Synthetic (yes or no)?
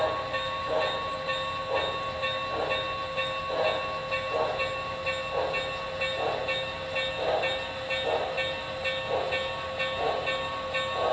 no